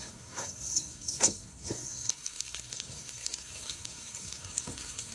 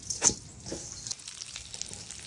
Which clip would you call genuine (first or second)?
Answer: second